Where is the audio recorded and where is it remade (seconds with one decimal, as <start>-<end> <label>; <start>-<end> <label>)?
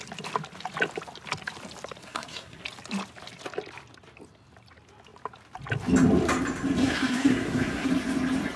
0.0-2.0 recorded; 2.0-2.6 remade; 2.6-6.8 recorded; 6.8-7.9 remade; 7.9-8.6 recorded